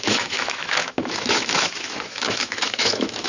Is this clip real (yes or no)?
no